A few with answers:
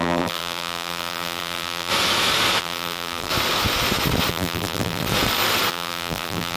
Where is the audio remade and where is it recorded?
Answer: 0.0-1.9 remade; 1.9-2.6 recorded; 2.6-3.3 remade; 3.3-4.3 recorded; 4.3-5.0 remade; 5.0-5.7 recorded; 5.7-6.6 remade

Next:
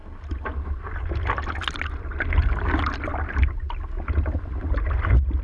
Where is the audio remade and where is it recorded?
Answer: 0.0-5.4 recorded

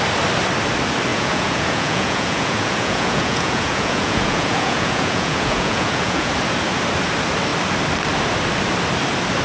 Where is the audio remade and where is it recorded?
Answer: 0.0-1.1 recorded; 1.1-6.3 remade; 6.3-9.4 recorded